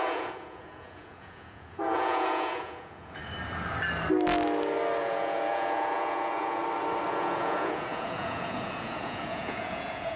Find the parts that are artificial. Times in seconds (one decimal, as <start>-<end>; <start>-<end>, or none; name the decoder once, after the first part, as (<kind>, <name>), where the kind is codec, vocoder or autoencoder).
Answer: 0.0-3.2 (vocoder, Vocos); 5.0-6.6; 7.1-10.2